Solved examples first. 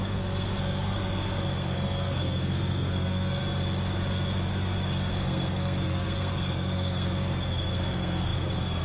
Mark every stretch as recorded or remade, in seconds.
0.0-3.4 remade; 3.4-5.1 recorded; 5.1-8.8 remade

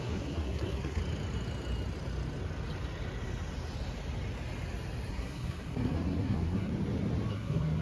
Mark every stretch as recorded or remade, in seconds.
0.0-1.0 remade; 1.0-5.1 recorded; 5.1-6.7 remade; 6.7-7.3 recorded; 7.3-7.8 remade